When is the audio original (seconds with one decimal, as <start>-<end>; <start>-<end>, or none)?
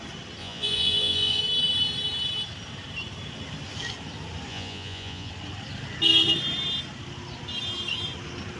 0.0-0.4; 1.4-4.5; 5.3-8.6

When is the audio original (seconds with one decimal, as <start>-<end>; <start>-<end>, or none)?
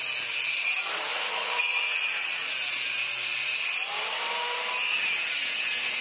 0.0-1.1; 2.5-6.0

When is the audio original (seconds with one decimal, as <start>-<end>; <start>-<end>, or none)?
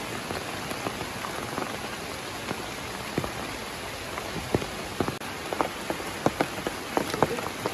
0.0-7.7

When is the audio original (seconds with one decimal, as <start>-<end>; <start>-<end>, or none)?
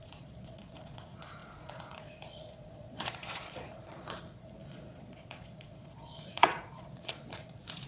none